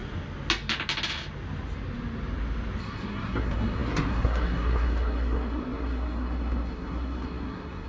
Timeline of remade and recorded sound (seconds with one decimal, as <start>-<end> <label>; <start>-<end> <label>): 0.0-2.8 recorded; 2.8-7.9 remade

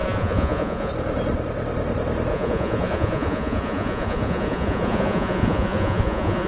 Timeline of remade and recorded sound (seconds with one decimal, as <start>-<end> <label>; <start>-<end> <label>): 0.0-0.9 remade; 0.9-2.3 recorded; 2.3-6.5 remade

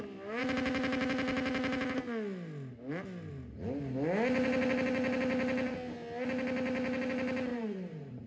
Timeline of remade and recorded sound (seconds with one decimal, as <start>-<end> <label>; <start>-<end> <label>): 0.0-7.5 recorded; 7.5-8.3 remade

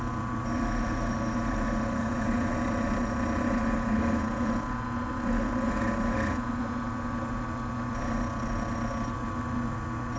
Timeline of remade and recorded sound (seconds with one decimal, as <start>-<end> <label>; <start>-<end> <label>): 0.0-10.2 recorded

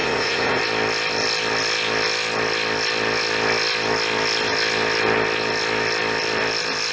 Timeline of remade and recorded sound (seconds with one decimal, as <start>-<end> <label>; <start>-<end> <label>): 0.0-0.6 remade; 0.6-6.9 recorded

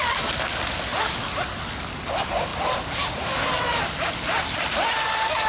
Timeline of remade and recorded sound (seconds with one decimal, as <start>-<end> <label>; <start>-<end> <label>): 0.0-5.5 recorded

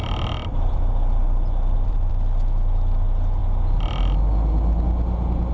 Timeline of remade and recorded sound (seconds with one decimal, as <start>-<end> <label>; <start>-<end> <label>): 0.0-2.1 remade; 2.1-5.5 recorded